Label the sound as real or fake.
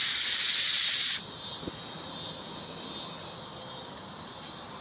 real